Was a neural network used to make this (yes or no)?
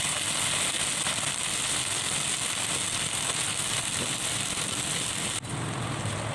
no